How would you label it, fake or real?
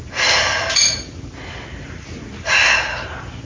real